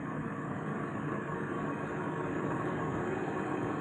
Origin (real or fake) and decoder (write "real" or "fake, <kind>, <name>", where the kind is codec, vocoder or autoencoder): fake, codec, DAC